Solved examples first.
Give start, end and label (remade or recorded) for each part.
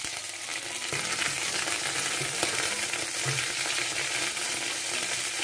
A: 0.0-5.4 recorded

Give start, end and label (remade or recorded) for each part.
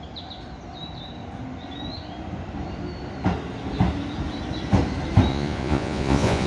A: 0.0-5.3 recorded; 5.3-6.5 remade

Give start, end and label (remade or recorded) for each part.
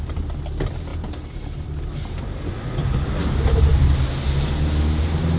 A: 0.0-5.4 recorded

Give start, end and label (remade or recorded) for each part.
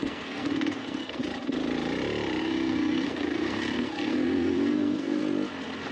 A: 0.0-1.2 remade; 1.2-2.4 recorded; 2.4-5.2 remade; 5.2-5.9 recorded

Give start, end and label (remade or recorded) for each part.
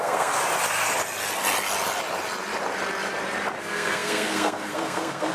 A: 0.0-0.4 remade; 0.4-3.6 recorded; 3.6-5.3 remade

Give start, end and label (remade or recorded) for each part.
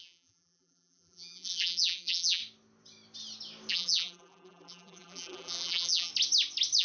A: 0.0-2.4 remade; 2.4-3.7 recorded; 3.7-6.1 remade; 6.1-6.8 recorded